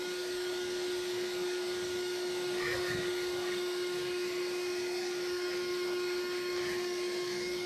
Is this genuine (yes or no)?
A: no